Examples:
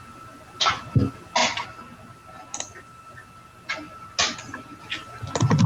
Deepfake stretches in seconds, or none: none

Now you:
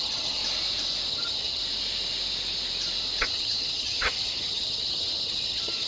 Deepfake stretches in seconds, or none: 0.0-0.4; 1.1-1.6; 3.2-5.9

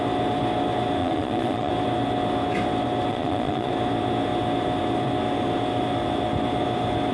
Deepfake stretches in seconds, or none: 1.0-1.7; 3.1-3.7

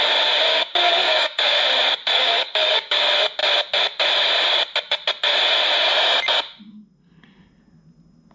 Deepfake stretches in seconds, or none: 0.5-1.6; 2.1-3.0